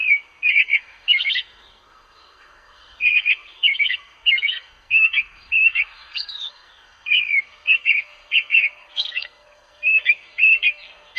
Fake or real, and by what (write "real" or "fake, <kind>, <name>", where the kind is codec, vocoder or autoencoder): fake, codec, SNAC